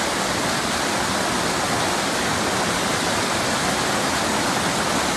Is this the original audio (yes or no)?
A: yes